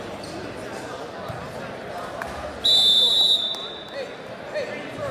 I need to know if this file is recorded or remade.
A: recorded